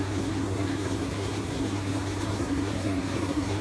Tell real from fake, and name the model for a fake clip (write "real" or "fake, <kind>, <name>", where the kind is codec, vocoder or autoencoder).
fake, codec, SNAC